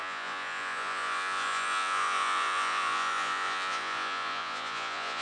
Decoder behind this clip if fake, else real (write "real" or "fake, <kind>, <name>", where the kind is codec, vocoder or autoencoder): fake, vocoder, Vocos